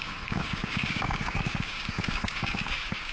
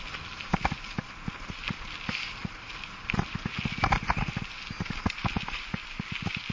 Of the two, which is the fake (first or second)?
first